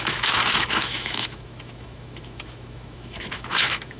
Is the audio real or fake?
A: fake